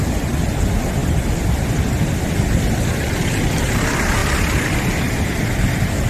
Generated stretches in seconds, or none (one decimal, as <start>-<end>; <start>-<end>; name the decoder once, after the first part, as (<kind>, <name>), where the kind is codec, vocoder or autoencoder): 1.0-3.2 (vocoder, BigVGAN v2)